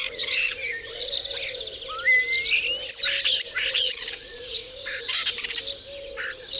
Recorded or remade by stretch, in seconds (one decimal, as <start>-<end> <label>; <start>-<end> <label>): 0.0-0.6 remade; 0.6-3.7 recorded; 3.7-5.2 remade; 5.2-6.6 recorded